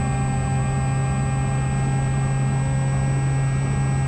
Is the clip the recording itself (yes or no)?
yes